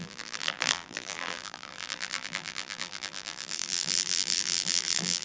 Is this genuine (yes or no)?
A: no